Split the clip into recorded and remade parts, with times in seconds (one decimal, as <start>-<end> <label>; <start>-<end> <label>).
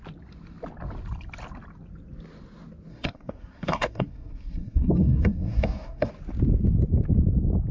0.0-2.9 recorded; 2.9-6.1 remade; 6.1-7.7 recorded